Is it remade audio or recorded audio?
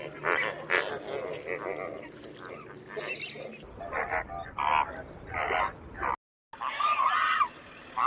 recorded